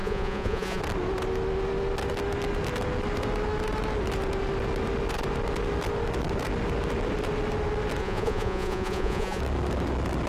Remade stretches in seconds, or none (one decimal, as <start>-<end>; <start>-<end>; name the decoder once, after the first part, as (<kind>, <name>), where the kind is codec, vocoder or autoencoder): 0.0-0.8 (vocoder, Vocos); 8.0-9.4